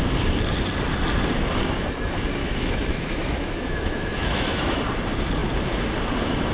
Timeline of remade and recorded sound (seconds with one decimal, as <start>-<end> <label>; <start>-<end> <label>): 0.0-2.4 recorded; 2.4-4.8 remade; 4.8-6.5 recorded